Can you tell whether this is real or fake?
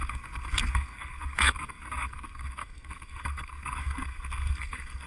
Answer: fake